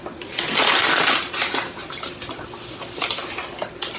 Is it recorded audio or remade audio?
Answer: recorded